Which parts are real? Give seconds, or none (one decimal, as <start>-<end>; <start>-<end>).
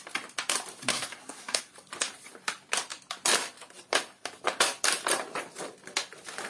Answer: 0.0-0.9; 1.6-6.5